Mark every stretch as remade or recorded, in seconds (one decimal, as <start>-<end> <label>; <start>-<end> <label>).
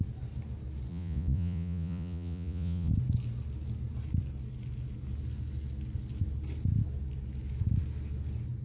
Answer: 0.0-0.9 recorded; 0.9-2.9 remade; 2.9-8.6 recorded